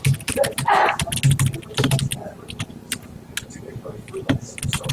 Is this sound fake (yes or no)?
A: no